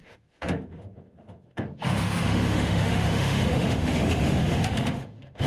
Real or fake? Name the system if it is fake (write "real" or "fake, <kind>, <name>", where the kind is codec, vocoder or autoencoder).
fake, autoencoder, DAC-VAE